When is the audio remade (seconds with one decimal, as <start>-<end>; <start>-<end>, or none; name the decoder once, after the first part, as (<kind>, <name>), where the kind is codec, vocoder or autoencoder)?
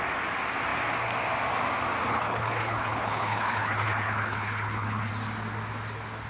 2.1-5.1 (codec, HILCodec)